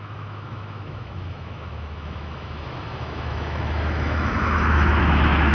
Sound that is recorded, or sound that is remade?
remade